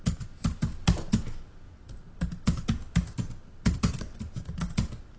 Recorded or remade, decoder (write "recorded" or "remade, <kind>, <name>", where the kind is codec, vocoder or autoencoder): recorded